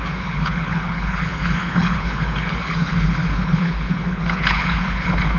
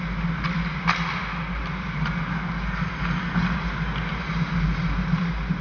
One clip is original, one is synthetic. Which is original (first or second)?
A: second